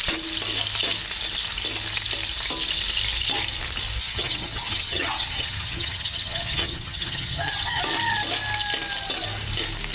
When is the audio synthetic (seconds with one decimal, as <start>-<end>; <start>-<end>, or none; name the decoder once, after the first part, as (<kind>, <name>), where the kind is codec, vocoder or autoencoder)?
4.0-7.8 (vocoder, HiFi-GAN)